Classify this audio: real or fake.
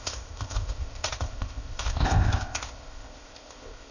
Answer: fake